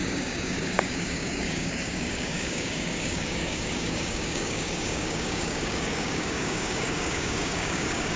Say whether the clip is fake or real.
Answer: fake